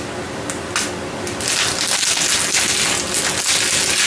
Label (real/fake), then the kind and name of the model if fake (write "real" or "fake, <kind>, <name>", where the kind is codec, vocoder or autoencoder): real